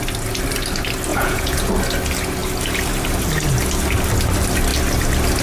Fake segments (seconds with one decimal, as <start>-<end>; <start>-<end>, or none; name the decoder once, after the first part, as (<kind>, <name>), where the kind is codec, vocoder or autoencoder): 1.1-1.7 (vocoder, Vocos)